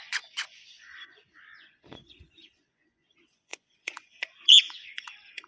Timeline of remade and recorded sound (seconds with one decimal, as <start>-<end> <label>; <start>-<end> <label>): 0.0-5.5 remade